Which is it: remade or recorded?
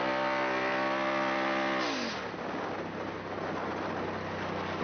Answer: recorded